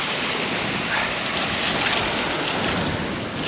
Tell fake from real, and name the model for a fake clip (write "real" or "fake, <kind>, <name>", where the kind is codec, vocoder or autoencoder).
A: real